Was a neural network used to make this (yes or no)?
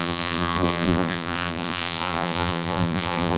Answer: yes